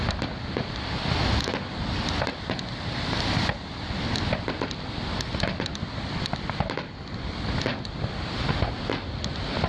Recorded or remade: recorded